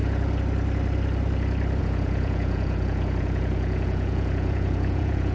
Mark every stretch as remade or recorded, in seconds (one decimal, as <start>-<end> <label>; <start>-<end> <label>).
0.0-1.8 recorded; 1.8-5.3 remade